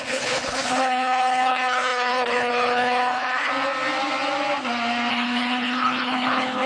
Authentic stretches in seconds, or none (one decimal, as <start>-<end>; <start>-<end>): 3.5-5.1